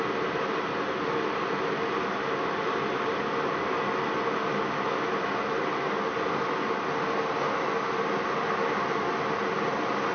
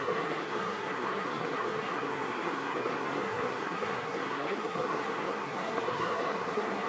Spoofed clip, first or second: second